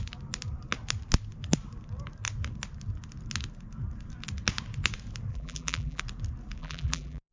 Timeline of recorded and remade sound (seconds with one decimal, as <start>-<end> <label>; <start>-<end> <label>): 0.0-5.3 recorded; 5.3-6.0 remade; 6.0-6.6 recorded; 6.6-7.3 remade